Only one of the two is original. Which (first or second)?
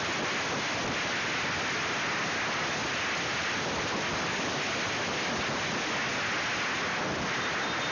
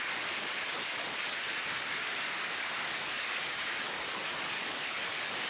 first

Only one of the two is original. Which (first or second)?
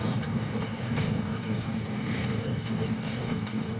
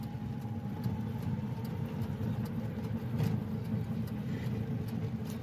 second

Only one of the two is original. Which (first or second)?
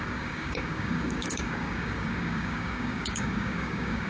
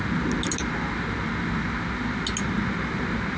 second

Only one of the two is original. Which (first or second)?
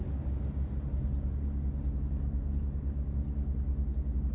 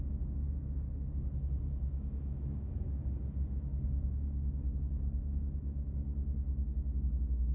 first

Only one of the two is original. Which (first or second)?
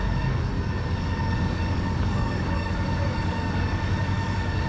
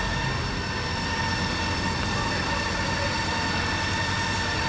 second